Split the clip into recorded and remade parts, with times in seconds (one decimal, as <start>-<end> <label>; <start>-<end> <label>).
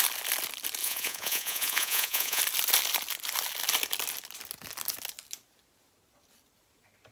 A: 0.0-0.8 recorded; 0.8-2.4 remade; 2.4-7.1 recorded